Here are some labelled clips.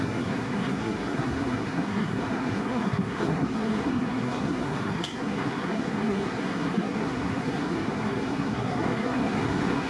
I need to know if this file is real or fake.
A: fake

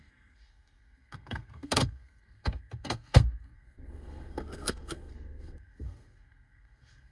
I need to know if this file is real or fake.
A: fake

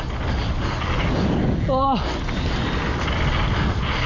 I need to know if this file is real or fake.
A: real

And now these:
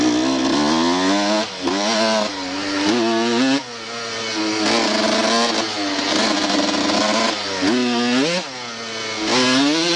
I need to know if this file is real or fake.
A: real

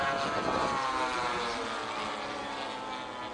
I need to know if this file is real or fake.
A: real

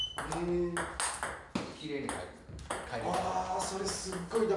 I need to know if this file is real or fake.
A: real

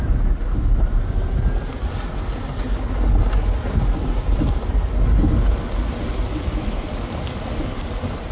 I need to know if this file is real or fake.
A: real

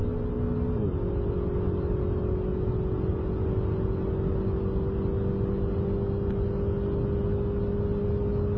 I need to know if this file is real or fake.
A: real